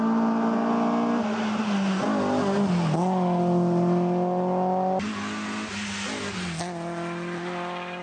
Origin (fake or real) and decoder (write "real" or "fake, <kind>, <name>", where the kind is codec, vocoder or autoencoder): real